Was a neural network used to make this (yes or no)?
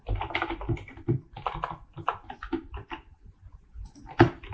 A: no